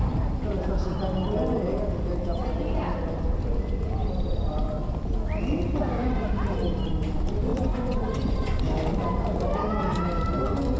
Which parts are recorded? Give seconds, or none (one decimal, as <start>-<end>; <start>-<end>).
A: 0.0-7.5; 8.6-10.8